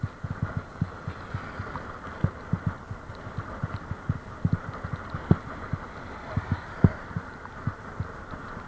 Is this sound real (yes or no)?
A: yes